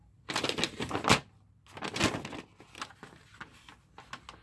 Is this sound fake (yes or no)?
no